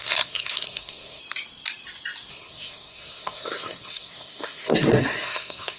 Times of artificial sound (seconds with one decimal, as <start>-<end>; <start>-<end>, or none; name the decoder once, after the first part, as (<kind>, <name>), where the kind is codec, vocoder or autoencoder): 0.0-1.2 (codec, SNAC); 2.3-5.8